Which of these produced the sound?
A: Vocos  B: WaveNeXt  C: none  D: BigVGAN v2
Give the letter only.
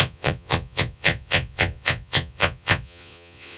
A